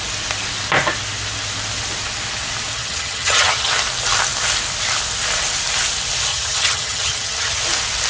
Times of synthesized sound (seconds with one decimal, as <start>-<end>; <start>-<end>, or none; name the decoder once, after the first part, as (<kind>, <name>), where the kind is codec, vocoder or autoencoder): 2.7-3.7 (vocoder, HiFi-GAN); 6.3-7.6